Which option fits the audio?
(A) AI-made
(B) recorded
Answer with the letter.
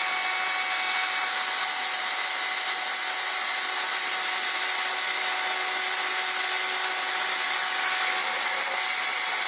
B